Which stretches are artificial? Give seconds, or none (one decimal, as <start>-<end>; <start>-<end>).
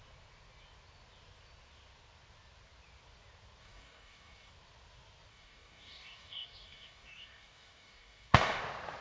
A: 3.6-4.5; 5.3-8.6